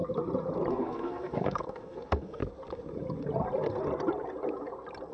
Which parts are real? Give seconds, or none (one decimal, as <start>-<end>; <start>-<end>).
0.0-0.7; 2.4-5.1